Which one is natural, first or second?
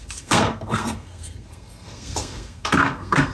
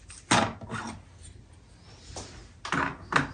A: second